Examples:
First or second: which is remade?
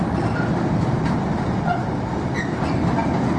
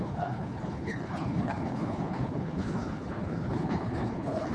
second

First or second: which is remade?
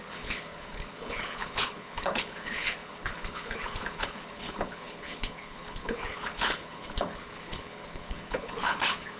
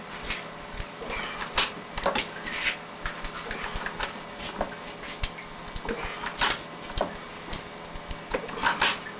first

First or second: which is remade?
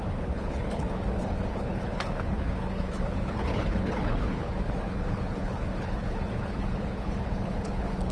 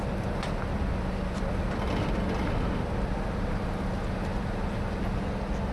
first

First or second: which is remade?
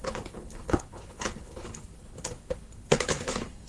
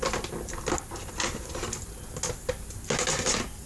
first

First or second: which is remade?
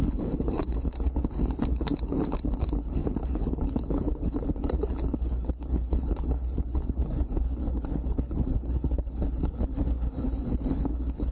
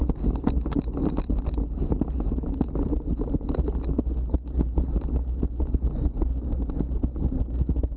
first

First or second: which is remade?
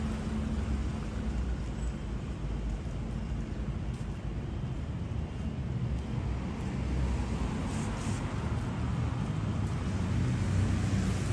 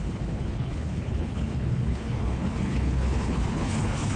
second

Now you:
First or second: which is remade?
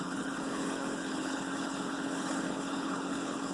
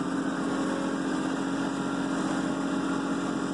first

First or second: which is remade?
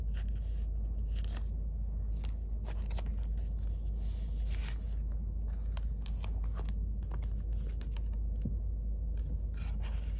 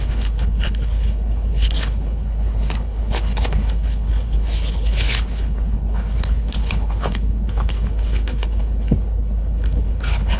second